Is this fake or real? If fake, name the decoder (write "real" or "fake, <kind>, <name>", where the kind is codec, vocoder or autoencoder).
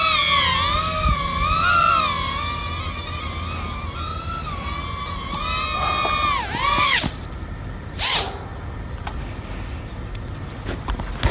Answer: real